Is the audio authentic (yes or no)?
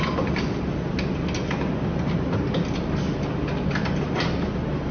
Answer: yes